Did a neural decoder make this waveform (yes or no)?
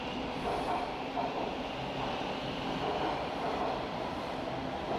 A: no